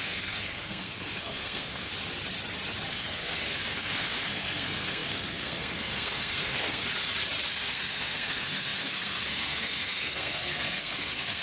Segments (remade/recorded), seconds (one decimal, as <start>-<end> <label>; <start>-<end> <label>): 0.0-1.9 remade; 1.9-2.9 recorded; 2.9-6.9 remade; 6.9-7.5 recorded; 7.5-11.4 remade